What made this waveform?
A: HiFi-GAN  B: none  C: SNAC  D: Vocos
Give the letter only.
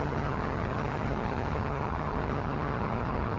A